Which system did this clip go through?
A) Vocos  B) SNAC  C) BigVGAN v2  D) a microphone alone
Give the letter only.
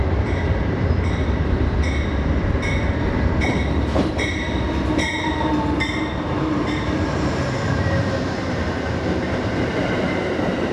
C